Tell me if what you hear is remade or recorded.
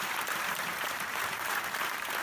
remade